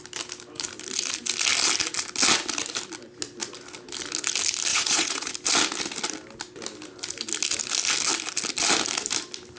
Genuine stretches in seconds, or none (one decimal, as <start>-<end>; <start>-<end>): 0.0-4.7; 5.3-9.6